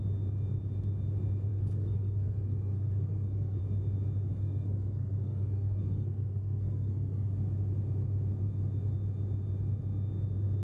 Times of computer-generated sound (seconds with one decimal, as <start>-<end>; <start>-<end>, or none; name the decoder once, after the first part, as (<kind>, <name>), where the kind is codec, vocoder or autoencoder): 1.5-3.6 (codec, SNAC); 4.4-7.3